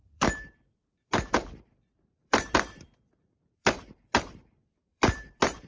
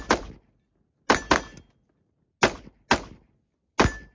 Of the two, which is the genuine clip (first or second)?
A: second